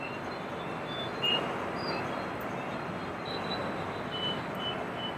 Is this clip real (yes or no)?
no